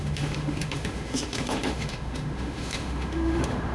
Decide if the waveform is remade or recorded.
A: remade